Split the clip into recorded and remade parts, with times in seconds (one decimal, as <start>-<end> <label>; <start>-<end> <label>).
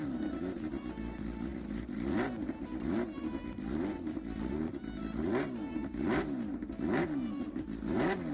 0.0-8.3 recorded